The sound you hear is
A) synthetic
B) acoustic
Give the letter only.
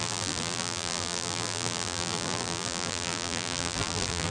A